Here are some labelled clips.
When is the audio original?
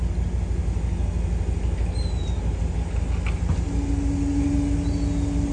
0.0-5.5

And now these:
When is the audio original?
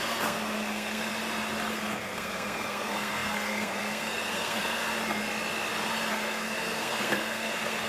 1.1-1.7; 4.8-6.1